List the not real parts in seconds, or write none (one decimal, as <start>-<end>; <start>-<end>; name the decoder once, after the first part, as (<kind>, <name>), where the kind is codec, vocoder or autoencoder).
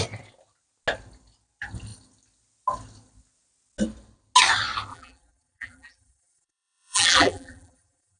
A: 4.9-8.2 (vocoder, BigVGAN v2)